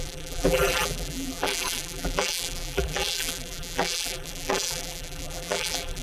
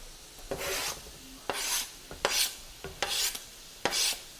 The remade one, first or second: first